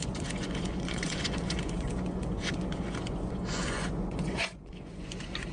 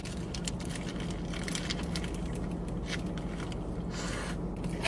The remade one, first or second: first